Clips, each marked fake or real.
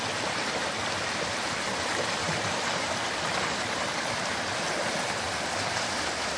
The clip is real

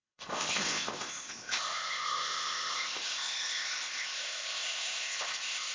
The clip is fake